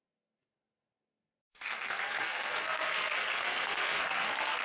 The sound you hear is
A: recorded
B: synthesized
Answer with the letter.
B